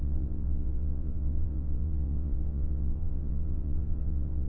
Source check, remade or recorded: remade